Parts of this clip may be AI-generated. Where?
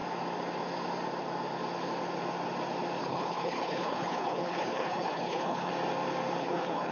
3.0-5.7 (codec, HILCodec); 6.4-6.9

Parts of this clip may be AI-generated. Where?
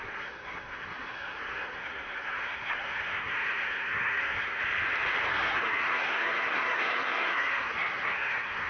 0.0-4.6 (codec, SNAC); 5.3-8.7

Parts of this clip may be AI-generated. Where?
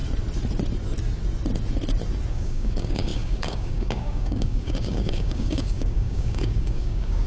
2.3-7.3 (codec, DAC)